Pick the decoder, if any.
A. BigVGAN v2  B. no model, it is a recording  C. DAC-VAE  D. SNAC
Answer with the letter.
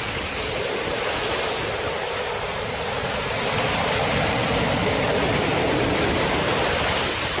B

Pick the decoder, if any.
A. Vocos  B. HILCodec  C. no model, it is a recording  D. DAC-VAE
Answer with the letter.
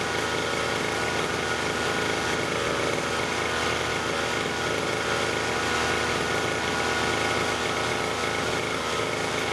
C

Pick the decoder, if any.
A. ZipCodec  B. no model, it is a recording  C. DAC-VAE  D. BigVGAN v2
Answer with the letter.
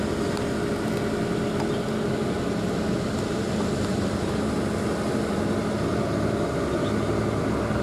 B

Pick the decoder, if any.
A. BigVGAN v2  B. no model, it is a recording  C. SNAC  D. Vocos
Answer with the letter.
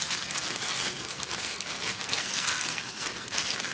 C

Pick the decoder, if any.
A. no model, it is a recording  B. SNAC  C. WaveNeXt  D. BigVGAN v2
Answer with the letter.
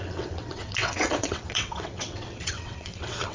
C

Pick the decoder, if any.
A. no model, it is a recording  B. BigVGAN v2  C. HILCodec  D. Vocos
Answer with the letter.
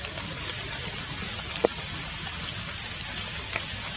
A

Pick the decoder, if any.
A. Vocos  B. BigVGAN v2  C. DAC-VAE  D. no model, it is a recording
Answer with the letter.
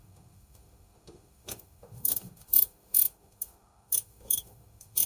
C